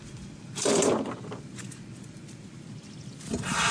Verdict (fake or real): real